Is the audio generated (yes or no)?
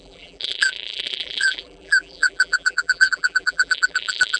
yes